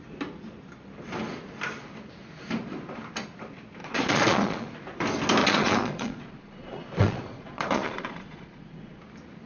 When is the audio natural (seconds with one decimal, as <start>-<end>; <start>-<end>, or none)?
0.0-3.8; 4.7-5.4; 9.0-9.5

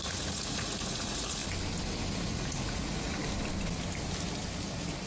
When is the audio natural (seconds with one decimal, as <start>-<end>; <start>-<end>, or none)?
1.4-2.2; 3.2-5.1

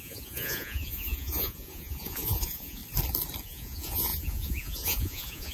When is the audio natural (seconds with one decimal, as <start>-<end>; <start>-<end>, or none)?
2.8-3.4

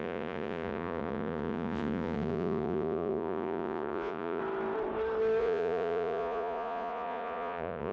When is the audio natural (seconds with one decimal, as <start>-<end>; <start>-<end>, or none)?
4.4-5.4

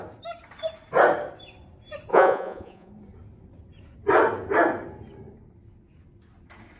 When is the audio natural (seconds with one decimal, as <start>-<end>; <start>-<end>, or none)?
0.0-2.1; 2.9-6.8